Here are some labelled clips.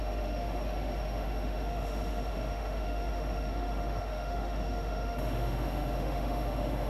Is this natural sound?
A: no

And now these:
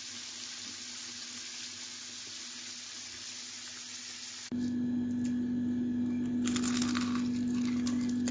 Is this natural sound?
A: yes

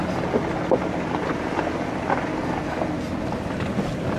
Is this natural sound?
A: yes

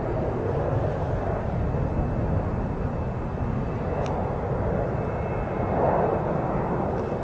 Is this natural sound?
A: yes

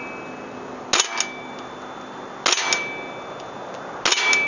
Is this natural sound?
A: yes